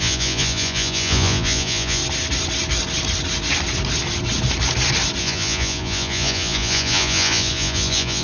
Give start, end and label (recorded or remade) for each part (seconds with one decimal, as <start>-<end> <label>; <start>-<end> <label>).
0.0-2.0 remade; 2.0-5.2 recorded; 5.2-8.2 remade